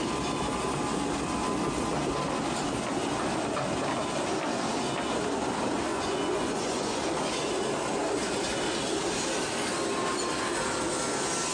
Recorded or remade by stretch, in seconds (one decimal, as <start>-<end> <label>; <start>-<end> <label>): 0.0-5.9 recorded; 5.9-7.0 remade; 7.0-11.5 recorded